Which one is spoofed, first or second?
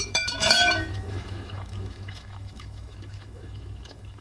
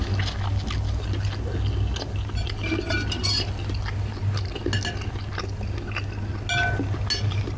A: first